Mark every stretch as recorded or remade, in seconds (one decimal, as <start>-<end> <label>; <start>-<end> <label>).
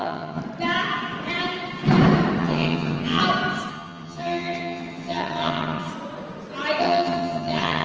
0.0-0.4 remade; 0.4-2.4 recorded; 2.4-3.2 remade; 3.2-3.7 recorded; 3.7-5.9 remade; 5.9-6.8 recorded; 6.8-7.8 remade